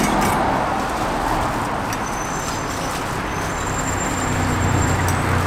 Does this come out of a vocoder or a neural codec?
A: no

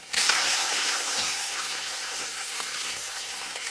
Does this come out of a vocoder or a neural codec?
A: yes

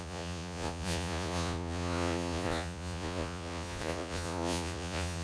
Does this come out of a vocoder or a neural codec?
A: yes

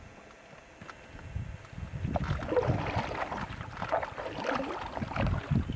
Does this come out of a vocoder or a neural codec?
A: no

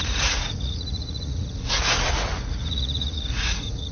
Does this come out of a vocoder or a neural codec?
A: yes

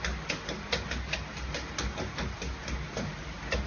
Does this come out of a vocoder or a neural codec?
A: no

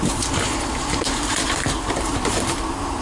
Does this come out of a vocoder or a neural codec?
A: yes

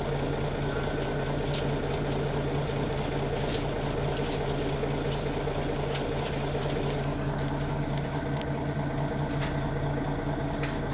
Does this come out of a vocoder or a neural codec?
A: no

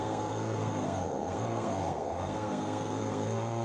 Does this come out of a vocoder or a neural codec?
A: yes